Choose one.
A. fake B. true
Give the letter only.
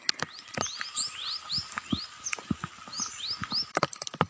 B